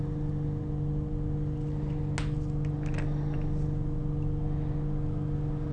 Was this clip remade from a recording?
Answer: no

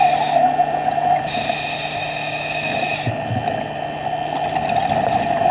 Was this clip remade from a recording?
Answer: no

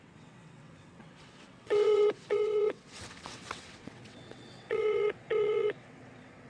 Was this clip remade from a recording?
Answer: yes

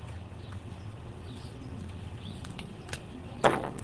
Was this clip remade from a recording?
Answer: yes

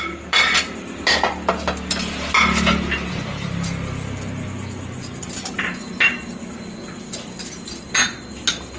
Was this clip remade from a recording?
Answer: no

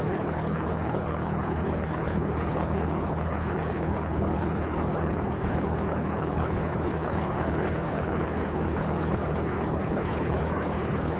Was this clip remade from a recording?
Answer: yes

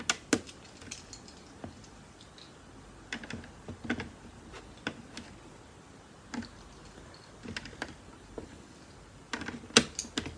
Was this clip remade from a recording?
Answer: no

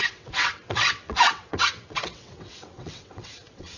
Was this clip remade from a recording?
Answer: yes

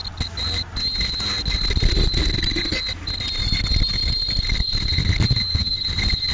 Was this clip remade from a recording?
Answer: no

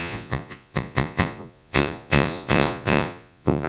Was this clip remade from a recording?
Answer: yes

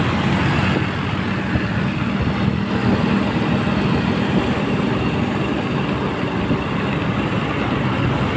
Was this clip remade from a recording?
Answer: no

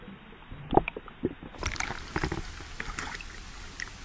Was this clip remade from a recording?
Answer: no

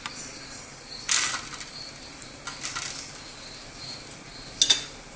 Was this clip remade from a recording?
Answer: no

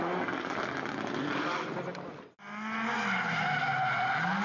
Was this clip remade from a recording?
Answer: no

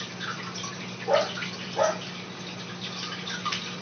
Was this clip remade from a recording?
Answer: no